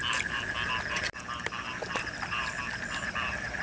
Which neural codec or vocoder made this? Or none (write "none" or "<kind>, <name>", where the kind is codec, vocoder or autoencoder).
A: none